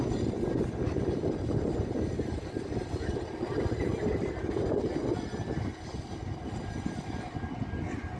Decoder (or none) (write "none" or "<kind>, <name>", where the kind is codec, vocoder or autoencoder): none